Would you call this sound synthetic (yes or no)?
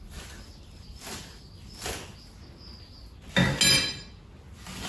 no